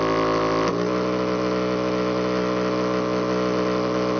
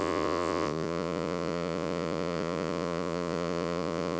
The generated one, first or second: second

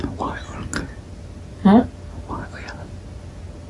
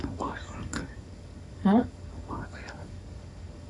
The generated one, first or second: second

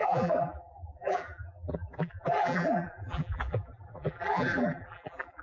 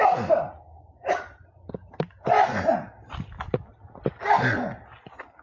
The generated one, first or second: first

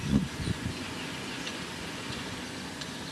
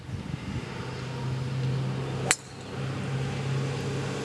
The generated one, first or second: first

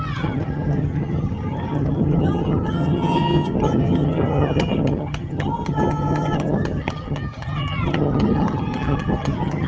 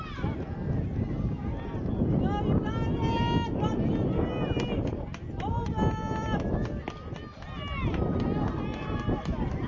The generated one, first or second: first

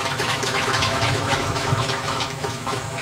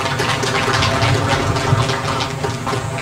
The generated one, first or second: first